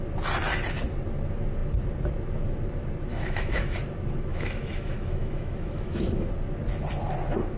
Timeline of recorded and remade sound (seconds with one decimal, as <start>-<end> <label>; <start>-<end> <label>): 0.0-3.1 recorded; 3.1-3.8 remade; 3.8-4.3 recorded; 4.3-6.3 remade; 6.3-7.6 recorded